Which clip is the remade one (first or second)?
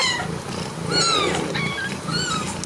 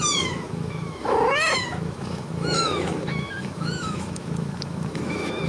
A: second